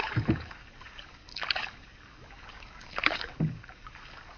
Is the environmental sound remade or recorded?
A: remade